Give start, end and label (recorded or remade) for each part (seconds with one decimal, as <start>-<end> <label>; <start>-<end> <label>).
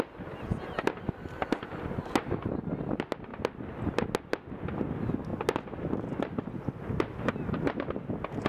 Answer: 0.0-8.5 recorded